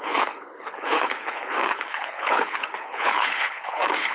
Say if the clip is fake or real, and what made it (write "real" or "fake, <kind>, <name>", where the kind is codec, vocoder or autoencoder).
fake, codec, HILCodec